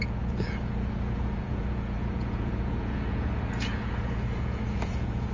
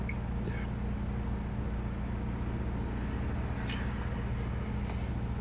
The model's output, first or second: first